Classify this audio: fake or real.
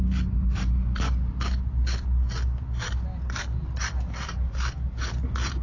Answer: real